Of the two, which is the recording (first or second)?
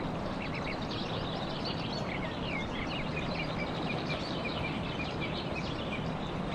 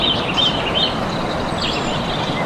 second